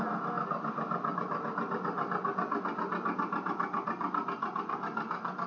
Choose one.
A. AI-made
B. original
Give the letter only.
B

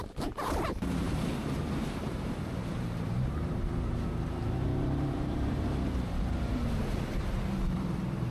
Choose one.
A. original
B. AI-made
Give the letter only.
B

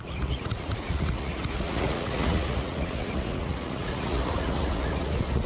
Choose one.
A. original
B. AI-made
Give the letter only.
B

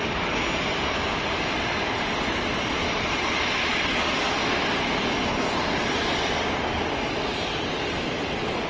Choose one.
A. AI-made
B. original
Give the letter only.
B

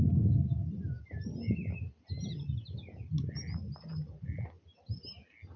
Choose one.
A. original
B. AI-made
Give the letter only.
A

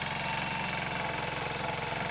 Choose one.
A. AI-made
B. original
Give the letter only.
B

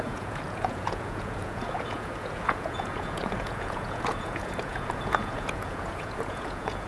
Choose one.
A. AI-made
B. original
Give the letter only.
A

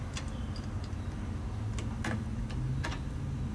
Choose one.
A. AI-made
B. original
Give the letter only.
B